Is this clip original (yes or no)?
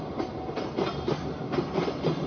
yes